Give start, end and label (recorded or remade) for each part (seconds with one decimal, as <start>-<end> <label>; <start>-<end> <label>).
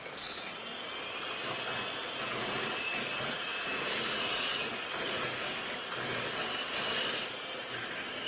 0.0-2.2 recorded; 2.2-5.5 remade; 5.5-8.3 recorded